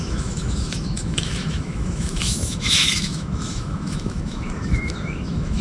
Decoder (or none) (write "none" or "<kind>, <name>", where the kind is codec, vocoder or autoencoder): autoencoder, DAC-VAE